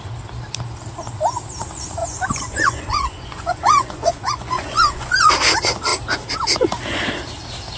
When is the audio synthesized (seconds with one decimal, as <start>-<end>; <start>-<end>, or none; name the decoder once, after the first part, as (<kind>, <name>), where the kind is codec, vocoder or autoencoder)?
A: 2.0-5.3 (vocoder, Vocos)